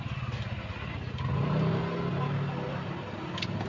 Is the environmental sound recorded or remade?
recorded